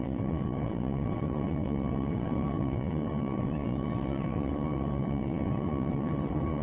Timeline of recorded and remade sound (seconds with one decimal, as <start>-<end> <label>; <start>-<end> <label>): 0.0-6.6 remade